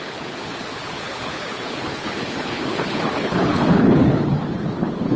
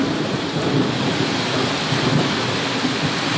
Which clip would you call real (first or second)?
second